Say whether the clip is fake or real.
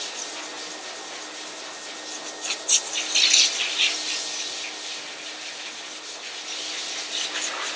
real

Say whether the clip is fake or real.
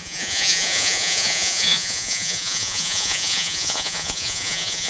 fake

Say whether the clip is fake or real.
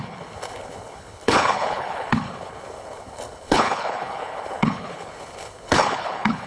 fake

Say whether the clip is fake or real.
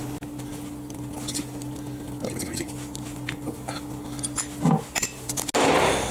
real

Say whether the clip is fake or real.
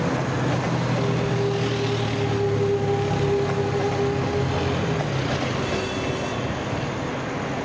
real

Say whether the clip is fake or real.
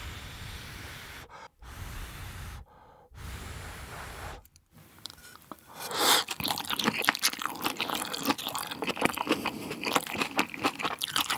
fake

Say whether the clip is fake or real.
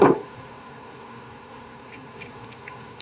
fake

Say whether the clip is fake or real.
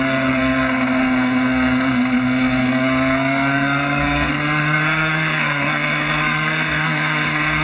fake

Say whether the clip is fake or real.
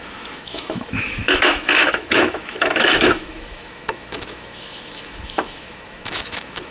fake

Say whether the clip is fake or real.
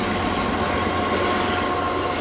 real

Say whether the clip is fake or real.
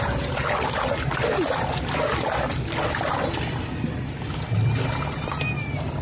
fake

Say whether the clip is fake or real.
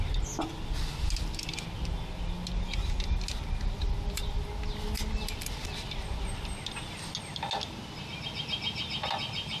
real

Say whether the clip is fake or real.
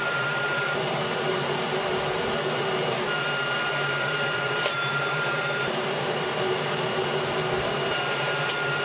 fake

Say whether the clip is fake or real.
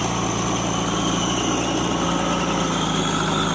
real